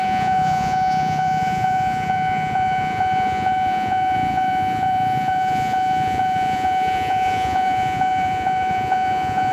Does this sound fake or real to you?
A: fake